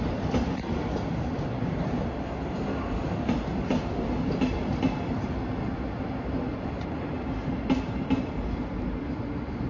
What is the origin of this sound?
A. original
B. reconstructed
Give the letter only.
A